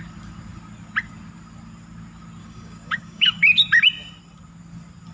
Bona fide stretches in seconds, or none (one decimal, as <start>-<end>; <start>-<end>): 0.0-2.4; 3.4-5.1